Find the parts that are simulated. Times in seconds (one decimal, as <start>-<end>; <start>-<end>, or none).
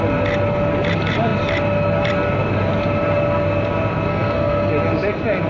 4.1-4.7